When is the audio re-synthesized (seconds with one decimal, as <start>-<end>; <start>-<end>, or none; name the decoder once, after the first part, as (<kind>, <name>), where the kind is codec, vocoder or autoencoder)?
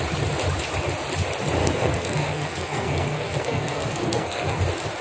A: 1.6-4.6 (codec, SNAC)